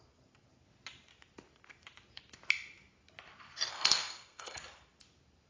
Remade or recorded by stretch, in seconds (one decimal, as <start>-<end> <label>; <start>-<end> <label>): 0.0-3.7 recorded; 3.7-4.6 remade; 4.6-5.5 recorded